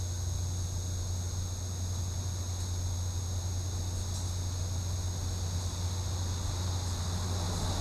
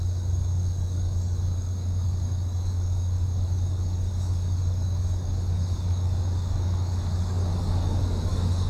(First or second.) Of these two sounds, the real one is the first